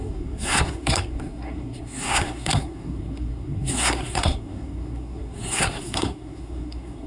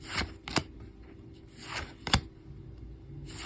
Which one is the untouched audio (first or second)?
second